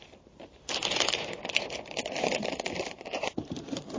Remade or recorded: remade